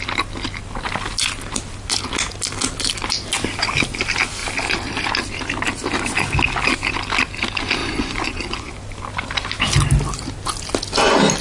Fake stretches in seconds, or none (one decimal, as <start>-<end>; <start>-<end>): 7.8-8.7